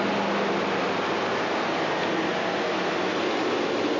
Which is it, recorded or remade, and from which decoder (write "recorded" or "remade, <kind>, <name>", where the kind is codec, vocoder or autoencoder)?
recorded